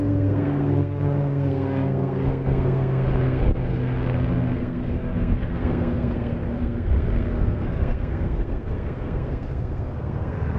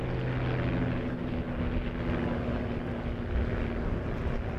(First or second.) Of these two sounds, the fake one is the first